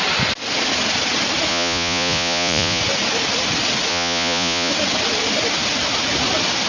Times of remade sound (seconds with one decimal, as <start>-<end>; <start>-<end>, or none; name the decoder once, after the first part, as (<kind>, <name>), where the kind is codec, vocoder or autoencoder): 1.5-2.8 (vocoder, Vocos); 3.9-4.7